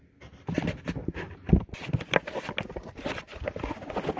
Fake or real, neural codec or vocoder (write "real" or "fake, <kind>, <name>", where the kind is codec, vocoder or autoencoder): real